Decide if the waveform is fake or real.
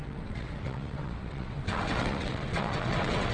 fake